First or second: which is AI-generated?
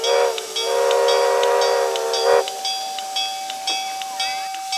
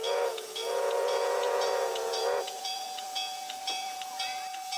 second